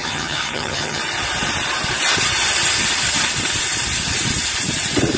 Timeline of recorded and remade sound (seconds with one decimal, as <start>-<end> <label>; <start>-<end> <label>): 0.0-1.0 remade; 1.0-5.2 recorded